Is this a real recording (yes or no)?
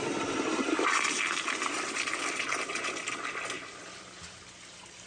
yes